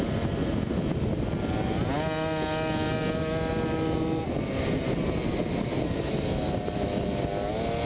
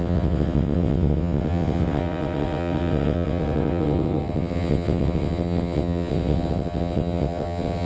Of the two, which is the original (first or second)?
first